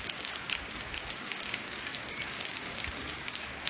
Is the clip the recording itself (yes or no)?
no